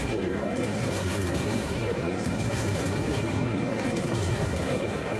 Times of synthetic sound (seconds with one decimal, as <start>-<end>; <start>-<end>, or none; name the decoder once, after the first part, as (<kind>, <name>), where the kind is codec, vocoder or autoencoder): 0.0-5.2 (codec, SNAC)